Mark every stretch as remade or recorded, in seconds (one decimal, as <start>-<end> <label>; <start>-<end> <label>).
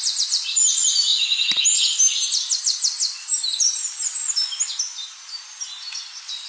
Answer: 0.0-1.1 remade; 1.1-2.6 recorded; 2.6-4.2 remade; 4.2-4.8 recorded; 4.8-6.5 remade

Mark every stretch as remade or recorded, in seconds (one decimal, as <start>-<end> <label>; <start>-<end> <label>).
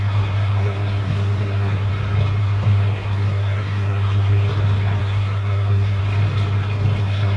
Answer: 0.0-1.9 remade; 1.9-2.4 recorded; 2.4-4.5 remade; 4.5-5.0 recorded; 5.0-6.0 remade; 6.0-7.0 recorded; 7.0-7.4 remade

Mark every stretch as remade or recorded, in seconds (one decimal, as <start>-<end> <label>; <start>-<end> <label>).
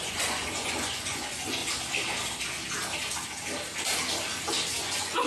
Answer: 0.0-1.6 remade; 1.6-4.8 recorded; 4.8-5.3 remade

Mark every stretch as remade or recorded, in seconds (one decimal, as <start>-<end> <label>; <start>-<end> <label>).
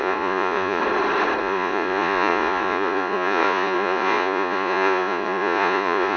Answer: 0.0-0.8 remade; 0.8-1.4 recorded; 1.4-6.2 remade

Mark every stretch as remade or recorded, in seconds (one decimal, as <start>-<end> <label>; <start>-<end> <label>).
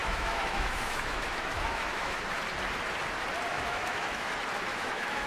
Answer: 0.0-2.2 remade; 2.2-3.5 recorded; 3.5-4.3 remade; 4.3-4.7 recorded; 4.7-5.3 remade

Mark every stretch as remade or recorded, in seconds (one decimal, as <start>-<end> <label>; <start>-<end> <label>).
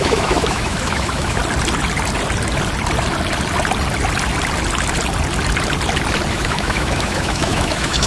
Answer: 0.0-1.4 remade; 1.4-6.3 recorded; 6.3-8.1 remade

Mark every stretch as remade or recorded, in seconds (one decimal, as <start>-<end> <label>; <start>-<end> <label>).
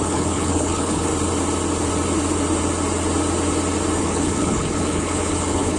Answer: 0.0-1.1 remade; 1.1-4.0 recorded; 4.0-5.8 remade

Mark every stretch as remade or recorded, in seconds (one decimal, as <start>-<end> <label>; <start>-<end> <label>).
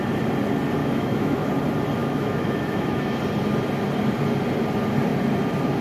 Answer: 0.0-0.8 recorded; 0.8-1.5 remade; 1.5-2.0 recorded; 2.0-3.2 remade; 3.2-5.8 recorded